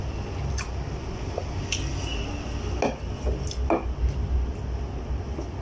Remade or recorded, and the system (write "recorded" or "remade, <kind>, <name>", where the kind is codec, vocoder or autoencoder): recorded